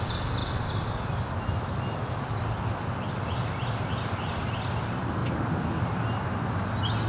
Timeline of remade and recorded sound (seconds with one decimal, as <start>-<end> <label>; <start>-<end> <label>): 0.0-7.1 recorded